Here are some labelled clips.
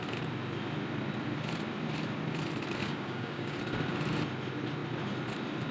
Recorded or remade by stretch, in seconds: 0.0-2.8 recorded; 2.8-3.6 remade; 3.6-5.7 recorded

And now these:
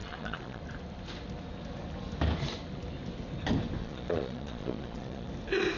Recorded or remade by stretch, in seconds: 0.0-0.6 remade; 0.6-3.8 recorded; 3.8-5.3 remade; 5.3-5.8 recorded

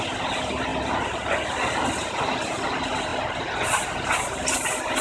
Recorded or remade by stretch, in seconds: 0.0-5.0 recorded

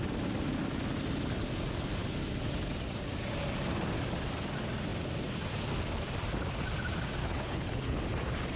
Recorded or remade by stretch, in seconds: 0.0-7.2 recorded; 7.2-8.0 remade; 8.0-8.6 recorded

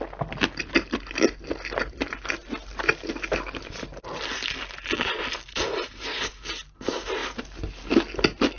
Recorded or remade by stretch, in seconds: 0.0-8.6 recorded

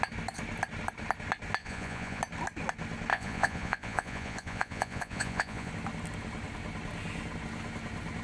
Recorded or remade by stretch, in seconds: 0.0-1.6 recorded; 1.6-2.2 remade; 2.2-3.1 recorded; 3.1-5.7 remade; 5.7-8.2 recorded

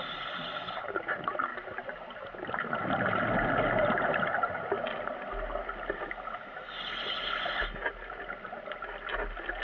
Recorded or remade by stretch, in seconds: 0.0-9.6 recorded